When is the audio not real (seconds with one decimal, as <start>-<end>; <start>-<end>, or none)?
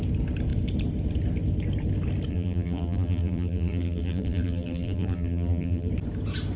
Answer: 2.3-5.9